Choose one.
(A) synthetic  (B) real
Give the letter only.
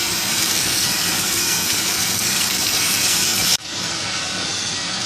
A